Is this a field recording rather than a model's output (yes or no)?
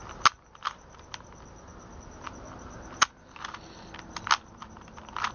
yes